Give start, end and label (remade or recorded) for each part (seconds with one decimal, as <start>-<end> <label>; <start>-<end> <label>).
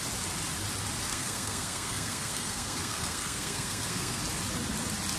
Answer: 0.0-1.1 recorded; 1.1-4.2 remade; 4.2-5.2 recorded